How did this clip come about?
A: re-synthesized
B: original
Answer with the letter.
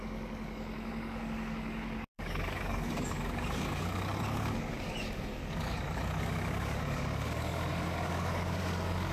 A